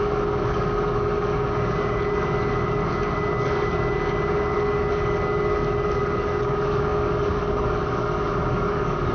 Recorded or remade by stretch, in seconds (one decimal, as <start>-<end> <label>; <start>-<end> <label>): 0.0-9.1 remade